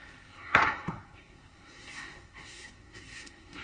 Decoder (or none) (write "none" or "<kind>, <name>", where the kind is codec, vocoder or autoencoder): codec, SNAC